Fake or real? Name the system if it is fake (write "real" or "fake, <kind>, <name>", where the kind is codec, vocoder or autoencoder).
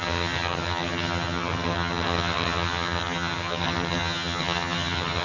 fake, vocoder, HiFi-GAN